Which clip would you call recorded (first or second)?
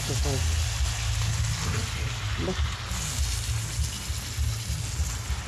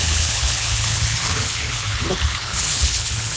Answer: first